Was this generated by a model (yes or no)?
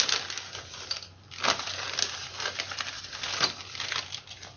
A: no